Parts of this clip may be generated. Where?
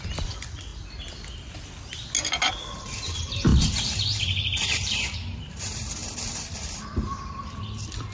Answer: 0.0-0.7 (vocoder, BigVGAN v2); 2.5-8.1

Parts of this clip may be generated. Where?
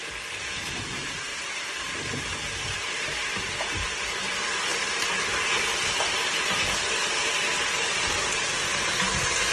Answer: none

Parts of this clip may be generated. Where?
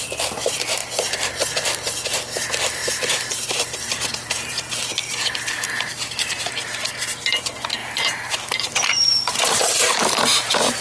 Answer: 0.8-1.3 (vocoder, BigVGAN v2); 2.8-4.0; 5.9-6.9; 7.8-10.8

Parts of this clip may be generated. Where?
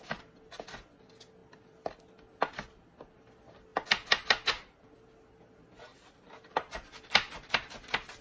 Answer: 1.4-2.0 (vocoder, BigVGAN v2); 5.9-6.7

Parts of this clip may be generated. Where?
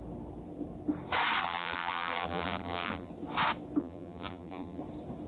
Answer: 1.4-3.1 (vocoder, BigVGAN v2); 3.8-4.8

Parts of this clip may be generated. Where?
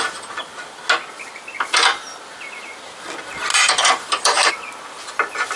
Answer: 3.5-4.5 (vocoder, BigVGAN v2)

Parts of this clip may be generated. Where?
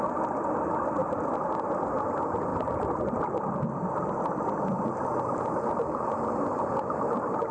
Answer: 0.0-1.0 (vocoder, BigVGAN v2); 2.1-7.5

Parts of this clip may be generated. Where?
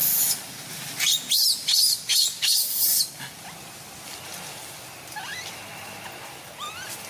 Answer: 0.0-0.7 (vocoder, BigVGAN v2); 2.1-6.4